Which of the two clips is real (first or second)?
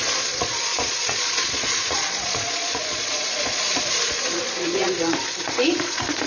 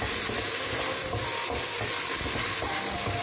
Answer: second